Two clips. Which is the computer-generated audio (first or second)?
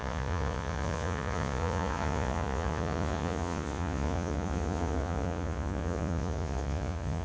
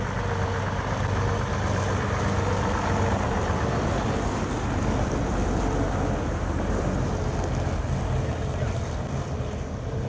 first